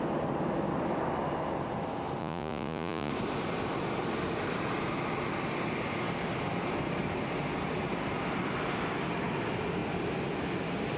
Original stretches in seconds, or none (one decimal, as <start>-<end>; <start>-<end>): 0.0-2.2; 3.1-11.0